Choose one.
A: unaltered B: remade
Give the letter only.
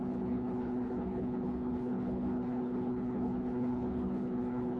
B